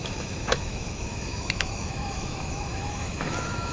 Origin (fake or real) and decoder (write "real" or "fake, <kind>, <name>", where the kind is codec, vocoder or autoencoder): fake, autoencoder, DAC-VAE